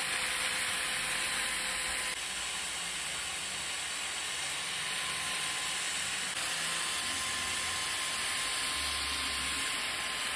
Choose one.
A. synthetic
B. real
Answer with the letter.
B